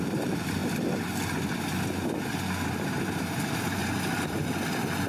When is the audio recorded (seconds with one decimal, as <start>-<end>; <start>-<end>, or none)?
0.6-2.2; 3.8-5.1